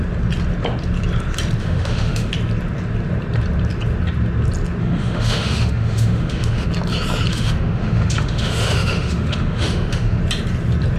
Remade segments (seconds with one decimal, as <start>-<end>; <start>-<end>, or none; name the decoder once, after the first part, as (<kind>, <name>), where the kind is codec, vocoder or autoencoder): 1.6-2.3 (autoencoder, DAC-VAE); 4.8-6.7; 7.3-10.2

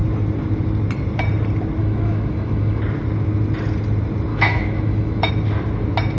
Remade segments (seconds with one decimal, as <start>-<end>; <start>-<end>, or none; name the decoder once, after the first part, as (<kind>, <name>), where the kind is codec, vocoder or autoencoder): 1.8-2.8 (autoencoder, DAC-VAE); 4.3-5.3